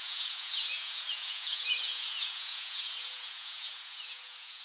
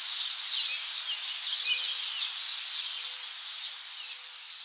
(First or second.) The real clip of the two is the second